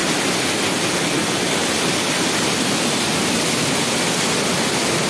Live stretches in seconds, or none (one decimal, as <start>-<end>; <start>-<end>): 0.0-5.1